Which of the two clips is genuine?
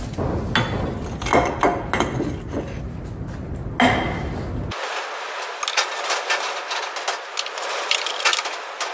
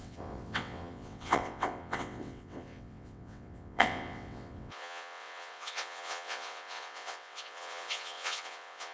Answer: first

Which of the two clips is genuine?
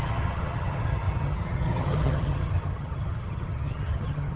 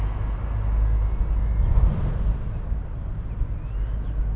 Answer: second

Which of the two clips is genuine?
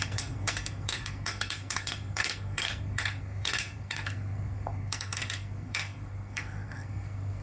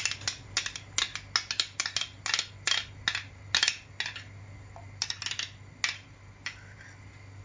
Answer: second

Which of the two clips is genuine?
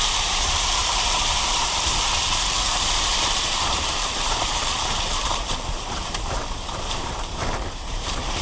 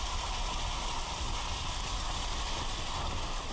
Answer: second